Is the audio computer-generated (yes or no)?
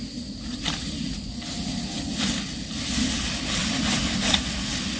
no